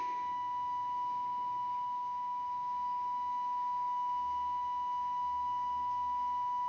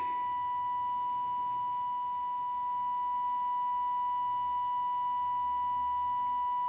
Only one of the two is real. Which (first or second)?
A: second